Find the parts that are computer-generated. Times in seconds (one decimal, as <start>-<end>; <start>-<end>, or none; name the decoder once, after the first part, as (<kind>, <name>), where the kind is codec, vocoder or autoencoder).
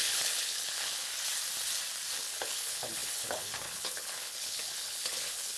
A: 0.0-1.1 (codec, HILCodec); 2.2-5.6